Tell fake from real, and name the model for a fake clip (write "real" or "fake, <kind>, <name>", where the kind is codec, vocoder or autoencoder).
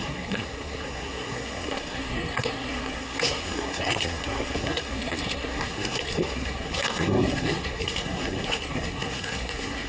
fake, codec, SNAC